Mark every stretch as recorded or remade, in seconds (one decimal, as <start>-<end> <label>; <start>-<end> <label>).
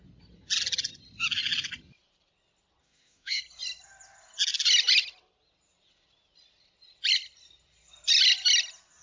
0.0-2.8 recorded; 2.8-3.4 remade; 3.4-9.0 recorded